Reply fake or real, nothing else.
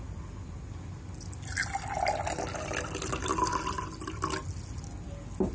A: real